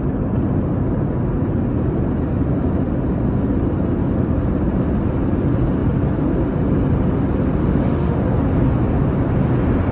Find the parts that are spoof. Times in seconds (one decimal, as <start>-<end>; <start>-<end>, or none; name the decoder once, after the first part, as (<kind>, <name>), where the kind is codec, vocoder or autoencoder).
7.6-8.2 (autoencoder, DAC-VAE)